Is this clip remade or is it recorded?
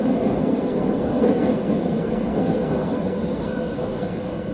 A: remade